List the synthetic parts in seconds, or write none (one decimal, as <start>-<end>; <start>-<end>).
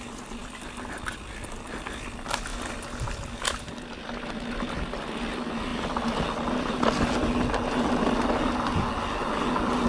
none